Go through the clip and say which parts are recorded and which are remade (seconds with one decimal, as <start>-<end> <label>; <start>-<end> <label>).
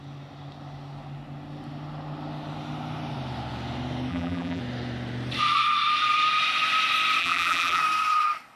0.0-4.1 recorded; 4.1-4.6 remade; 4.6-7.2 recorded; 7.2-7.8 remade; 7.8-8.6 recorded